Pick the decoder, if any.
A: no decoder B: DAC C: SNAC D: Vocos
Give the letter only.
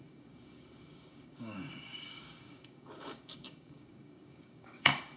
B